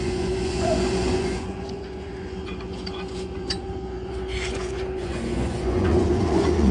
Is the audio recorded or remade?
remade